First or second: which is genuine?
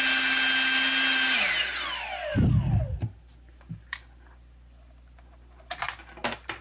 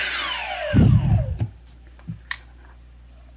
first